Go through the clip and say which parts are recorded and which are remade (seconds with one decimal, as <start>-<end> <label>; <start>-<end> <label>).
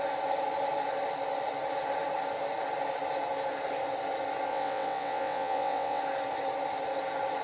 0.0-4.5 recorded; 4.5-6.0 remade; 6.0-7.4 recorded